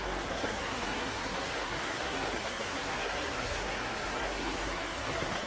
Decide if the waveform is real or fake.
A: fake